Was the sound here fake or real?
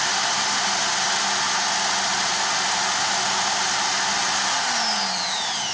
real